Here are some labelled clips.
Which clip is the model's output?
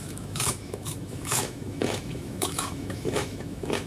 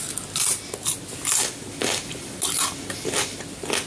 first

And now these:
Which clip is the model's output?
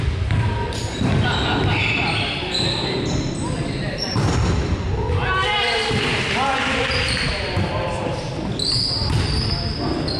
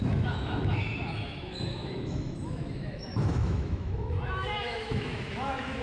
second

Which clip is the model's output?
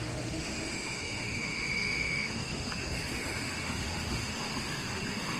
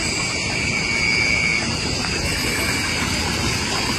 first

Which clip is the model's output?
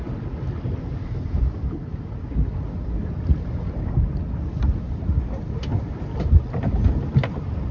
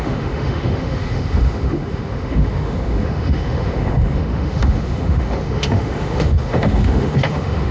second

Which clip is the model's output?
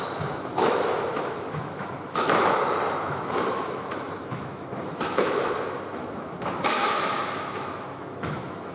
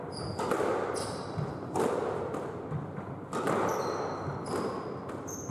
first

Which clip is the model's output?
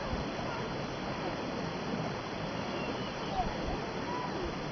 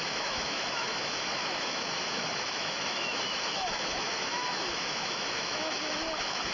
second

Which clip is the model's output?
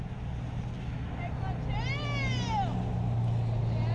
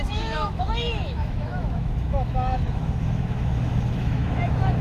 second